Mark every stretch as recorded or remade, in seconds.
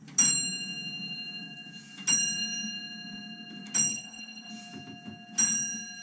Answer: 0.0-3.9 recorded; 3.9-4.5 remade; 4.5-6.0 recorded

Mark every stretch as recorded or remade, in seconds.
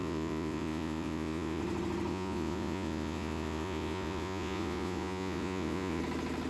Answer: 0.0-1.6 remade; 1.6-2.1 recorded; 2.1-6.0 remade; 6.0-6.5 recorded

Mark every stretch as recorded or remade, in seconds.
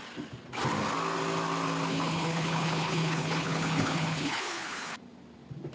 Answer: 0.0-1.9 recorded; 1.9-5.0 remade; 5.0-5.7 recorded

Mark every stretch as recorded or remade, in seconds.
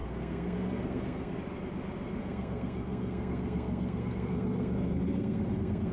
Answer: 0.0-1.4 remade; 1.4-2.2 recorded; 2.2-5.9 remade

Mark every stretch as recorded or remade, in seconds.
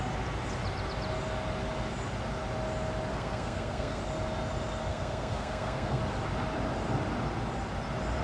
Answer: 0.0-3.1 recorded; 3.1-4.0 remade; 4.0-4.9 recorded; 4.9-6.0 remade; 6.0-8.2 recorded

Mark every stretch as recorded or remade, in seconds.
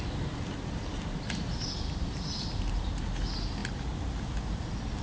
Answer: 0.0-5.0 recorded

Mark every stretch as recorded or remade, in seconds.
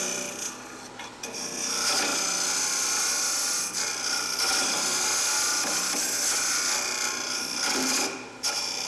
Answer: 0.0-8.9 recorded